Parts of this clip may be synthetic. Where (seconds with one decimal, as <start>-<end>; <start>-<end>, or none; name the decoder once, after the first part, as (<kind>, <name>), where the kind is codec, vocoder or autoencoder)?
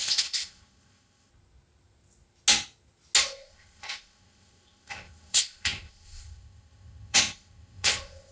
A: 0.0-1.3 (codec, ZipCodec); 3.2-8.3